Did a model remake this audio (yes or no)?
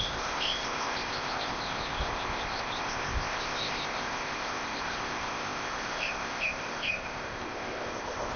yes